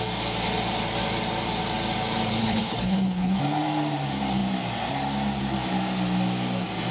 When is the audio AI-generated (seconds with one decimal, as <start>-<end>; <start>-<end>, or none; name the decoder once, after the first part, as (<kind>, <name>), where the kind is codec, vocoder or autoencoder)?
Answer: 2.4-3.4 (codec, HILCodec)